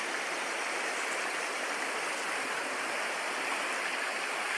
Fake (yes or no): no